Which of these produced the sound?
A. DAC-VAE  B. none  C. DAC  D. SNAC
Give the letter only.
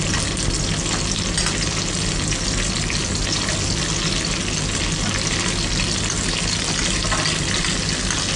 B